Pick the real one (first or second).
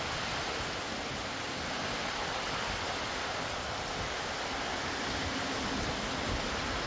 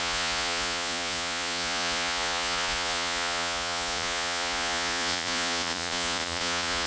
first